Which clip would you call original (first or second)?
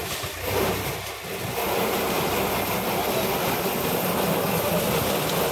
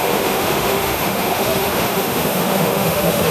first